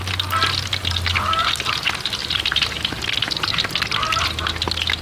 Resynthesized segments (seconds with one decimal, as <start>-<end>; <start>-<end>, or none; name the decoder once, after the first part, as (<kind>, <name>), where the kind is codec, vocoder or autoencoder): 2.2-2.8 (vocoder, BigVGAN v2)